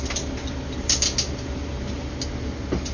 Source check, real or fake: real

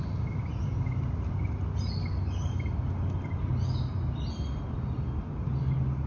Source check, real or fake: real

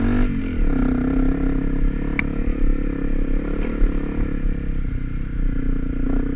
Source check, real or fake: real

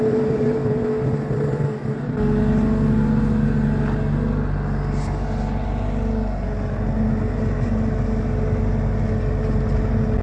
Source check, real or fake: real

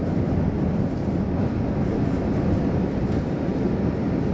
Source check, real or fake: real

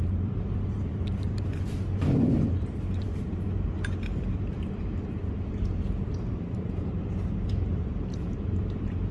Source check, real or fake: fake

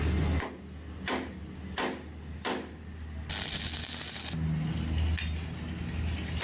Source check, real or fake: real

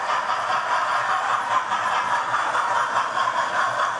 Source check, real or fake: real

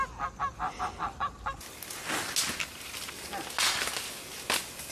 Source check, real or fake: real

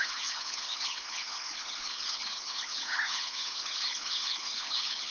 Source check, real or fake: fake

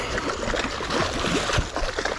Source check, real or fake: real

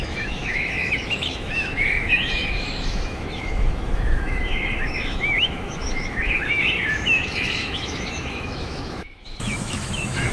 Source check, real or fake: fake